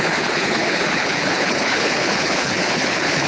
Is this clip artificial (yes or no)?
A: yes